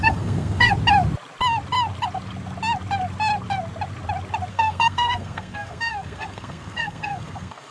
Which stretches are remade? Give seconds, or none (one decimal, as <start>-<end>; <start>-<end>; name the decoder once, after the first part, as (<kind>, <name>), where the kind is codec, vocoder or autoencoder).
0.0-0.7 (codec, SNAC); 4.5-7.7